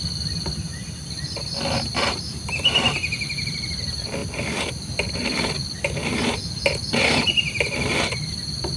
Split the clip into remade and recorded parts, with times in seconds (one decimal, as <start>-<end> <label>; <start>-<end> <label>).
0.0-8.8 recorded